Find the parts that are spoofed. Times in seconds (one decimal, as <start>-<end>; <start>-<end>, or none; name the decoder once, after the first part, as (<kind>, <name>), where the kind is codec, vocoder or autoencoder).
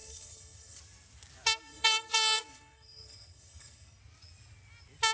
0.0-0.8 (codec, SNAC); 1.7-4.0